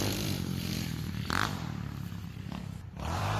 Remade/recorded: remade